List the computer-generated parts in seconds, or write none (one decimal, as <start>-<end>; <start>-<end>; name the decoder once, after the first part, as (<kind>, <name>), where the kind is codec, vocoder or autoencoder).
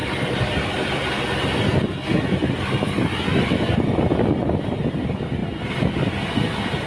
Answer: 0.0-1.0 (vocoder, BigVGAN v2)